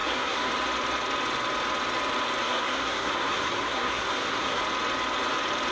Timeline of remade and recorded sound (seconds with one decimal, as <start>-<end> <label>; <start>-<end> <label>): 0.0-0.5 remade; 0.5-2.4 recorded; 2.4-4.6 remade; 4.6-5.7 recorded